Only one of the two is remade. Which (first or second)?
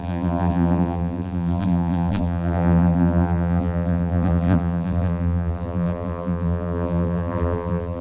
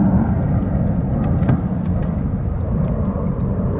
first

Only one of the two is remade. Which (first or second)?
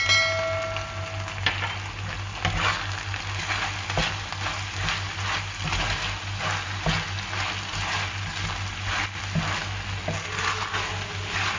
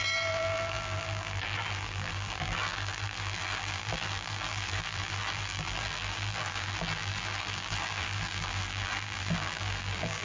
second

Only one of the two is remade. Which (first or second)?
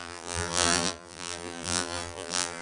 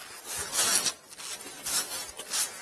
first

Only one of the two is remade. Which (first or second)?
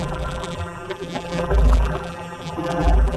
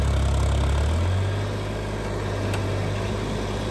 first